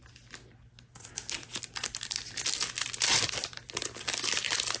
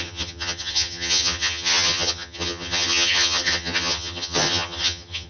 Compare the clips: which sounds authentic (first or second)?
first